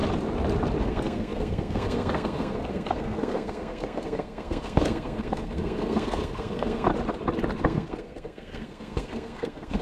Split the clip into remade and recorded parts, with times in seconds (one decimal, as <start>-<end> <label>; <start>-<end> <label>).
0.0-0.8 recorded; 0.8-6.9 remade; 6.9-7.6 recorded; 7.6-9.8 remade